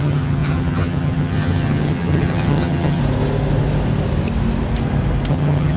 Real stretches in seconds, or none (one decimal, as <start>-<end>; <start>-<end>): 3.0-5.3